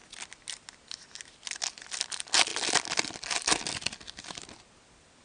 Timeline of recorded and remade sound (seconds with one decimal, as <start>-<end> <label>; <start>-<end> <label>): 0.0-5.2 recorded